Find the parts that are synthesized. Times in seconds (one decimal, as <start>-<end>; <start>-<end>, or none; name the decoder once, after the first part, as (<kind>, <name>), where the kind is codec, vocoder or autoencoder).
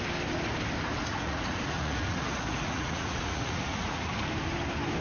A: 1.1-4.1 (vocoder, Vocos)